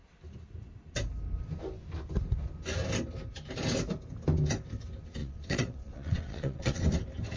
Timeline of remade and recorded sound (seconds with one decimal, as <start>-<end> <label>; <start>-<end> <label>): 0.0-5.2 recorded; 5.2-6.8 remade; 6.8-7.4 recorded